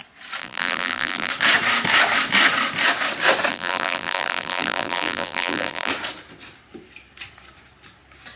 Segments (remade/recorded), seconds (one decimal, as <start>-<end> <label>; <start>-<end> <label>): 0.0-0.4 recorded; 0.4-1.3 remade; 1.3-3.5 recorded; 3.5-5.9 remade; 5.9-8.4 recorded